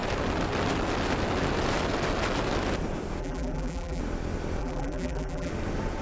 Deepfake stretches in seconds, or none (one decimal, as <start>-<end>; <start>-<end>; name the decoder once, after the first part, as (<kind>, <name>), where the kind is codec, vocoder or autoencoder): 3.2-4.0 (vocoder, BigVGAN v2); 4.6-5.5